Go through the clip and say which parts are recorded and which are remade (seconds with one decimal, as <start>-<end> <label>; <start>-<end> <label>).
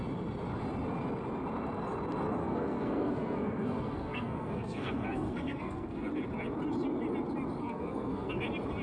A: 0.0-2.4 recorded; 2.4-6.1 remade; 6.1-7.6 recorded; 7.6-8.3 remade; 8.3-8.8 recorded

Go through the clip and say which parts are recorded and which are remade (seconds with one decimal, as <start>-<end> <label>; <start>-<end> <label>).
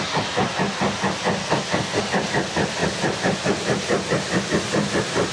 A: 0.0-1.4 recorded; 1.4-2.0 remade; 2.0-5.3 recorded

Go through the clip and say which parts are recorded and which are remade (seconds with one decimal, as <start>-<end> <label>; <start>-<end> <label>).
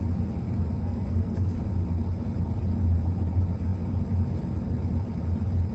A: 0.0-0.8 recorded; 0.8-1.6 remade; 1.6-5.7 recorded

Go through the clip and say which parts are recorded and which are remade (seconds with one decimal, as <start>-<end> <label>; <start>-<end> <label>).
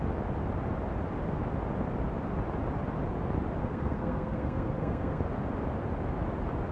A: 0.0-3.6 recorded; 3.6-5.2 remade; 5.2-6.7 recorded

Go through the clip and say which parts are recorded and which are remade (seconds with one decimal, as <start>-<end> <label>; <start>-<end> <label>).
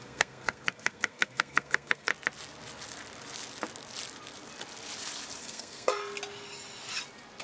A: 0.0-2.1 remade; 2.1-5.4 recorded; 5.4-6.0 remade; 6.0-7.4 recorded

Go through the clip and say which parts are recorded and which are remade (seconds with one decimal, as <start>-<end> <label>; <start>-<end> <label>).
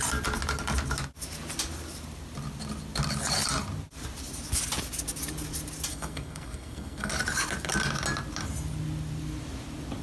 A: 0.0-5.9 recorded; 5.9-7.1 remade; 7.1-10.0 recorded